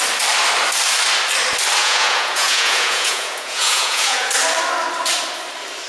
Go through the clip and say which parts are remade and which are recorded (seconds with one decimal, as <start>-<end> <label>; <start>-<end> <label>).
0.0-1.8 recorded; 1.8-4.3 remade; 4.3-5.9 recorded